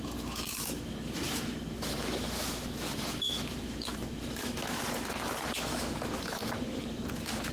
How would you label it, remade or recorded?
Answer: remade